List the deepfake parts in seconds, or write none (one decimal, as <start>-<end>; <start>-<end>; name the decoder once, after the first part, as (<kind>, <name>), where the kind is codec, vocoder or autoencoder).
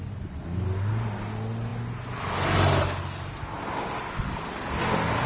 none